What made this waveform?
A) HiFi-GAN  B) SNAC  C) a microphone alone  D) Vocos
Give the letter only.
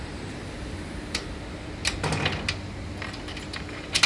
C